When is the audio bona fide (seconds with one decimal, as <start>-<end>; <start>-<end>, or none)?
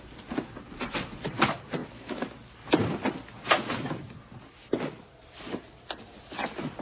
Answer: 0.0-6.8